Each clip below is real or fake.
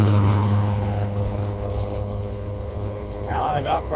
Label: fake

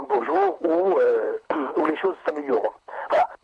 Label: fake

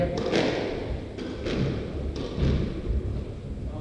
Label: real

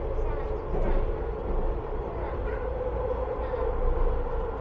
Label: real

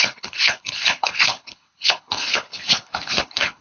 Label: fake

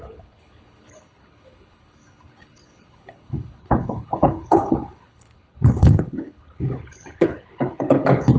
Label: fake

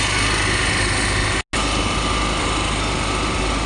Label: real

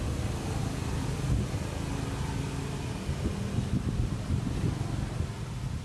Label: real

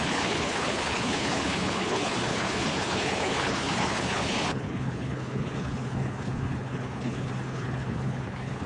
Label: fake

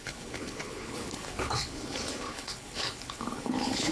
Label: fake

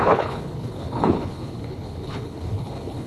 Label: fake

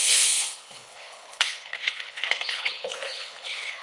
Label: fake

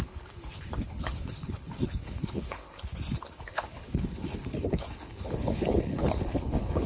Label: fake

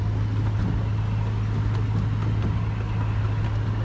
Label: real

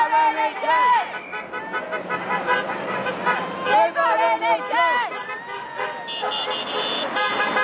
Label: real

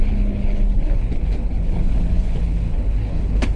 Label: fake